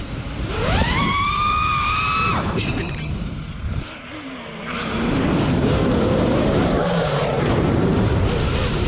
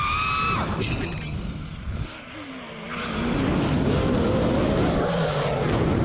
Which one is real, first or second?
second